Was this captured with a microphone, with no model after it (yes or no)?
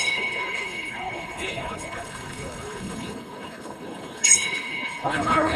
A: no